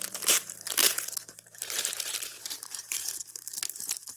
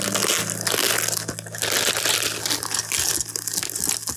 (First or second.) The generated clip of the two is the first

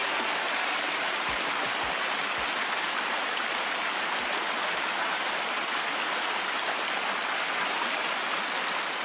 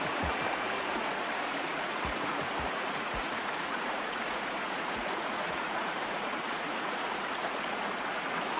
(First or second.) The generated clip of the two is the second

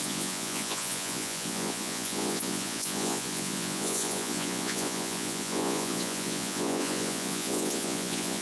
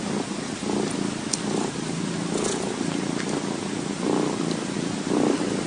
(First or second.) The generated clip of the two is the first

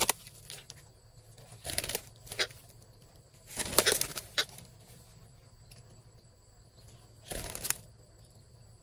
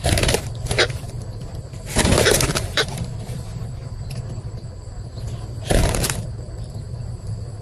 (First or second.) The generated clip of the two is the second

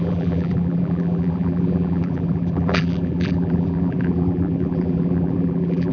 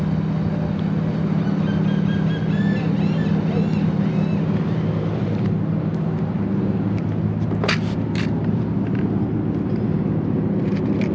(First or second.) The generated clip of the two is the first